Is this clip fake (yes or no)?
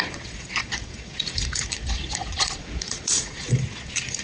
yes